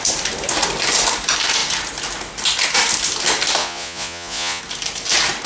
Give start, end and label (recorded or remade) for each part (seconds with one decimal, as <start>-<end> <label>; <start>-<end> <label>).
0.0-3.6 recorded; 3.6-4.6 remade; 4.6-5.5 recorded